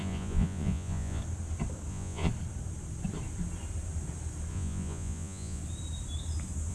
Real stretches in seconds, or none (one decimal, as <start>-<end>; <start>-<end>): 1.2-1.9; 2.3-4.5; 5.6-6.7